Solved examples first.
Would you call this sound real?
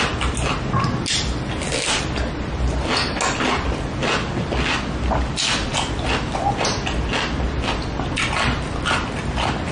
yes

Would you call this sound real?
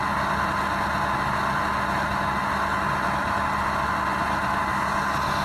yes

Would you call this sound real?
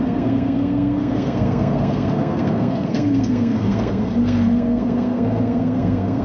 no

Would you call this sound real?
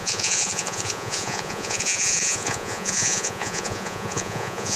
no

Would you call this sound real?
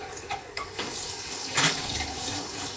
no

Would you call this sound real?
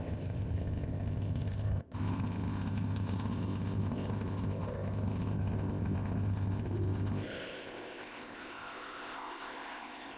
no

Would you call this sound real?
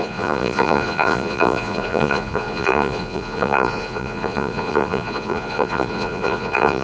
no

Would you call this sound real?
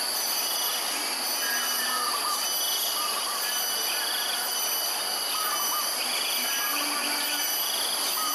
yes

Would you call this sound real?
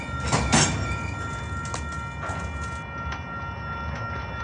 yes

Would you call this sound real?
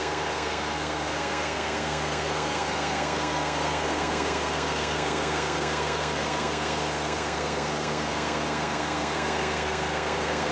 no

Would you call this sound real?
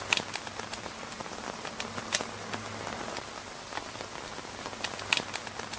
yes